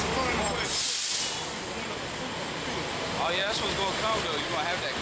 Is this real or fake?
real